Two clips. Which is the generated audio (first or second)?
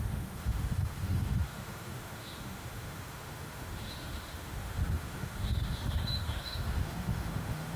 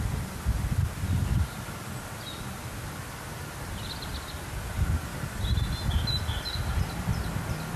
first